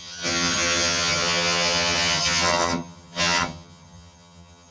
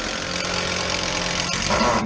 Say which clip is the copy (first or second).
first